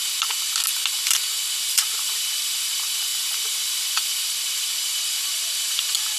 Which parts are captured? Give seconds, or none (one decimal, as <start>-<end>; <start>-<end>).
0.0-1.6